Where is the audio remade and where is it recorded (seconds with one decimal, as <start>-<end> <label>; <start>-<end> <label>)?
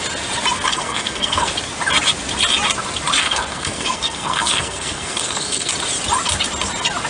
0.0-0.7 recorded; 0.7-1.5 remade; 1.5-3.2 recorded; 3.2-5.7 remade; 5.7-7.1 recorded